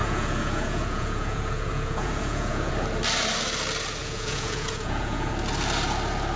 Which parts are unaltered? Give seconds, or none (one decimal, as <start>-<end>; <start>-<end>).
2.7-4.0; 5.3-6.4